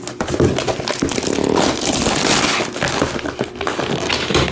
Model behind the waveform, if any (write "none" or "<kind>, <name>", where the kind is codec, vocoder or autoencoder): none